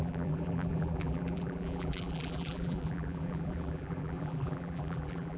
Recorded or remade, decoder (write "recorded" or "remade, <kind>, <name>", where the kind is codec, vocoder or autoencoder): remade, vocoder, BigVGAN v2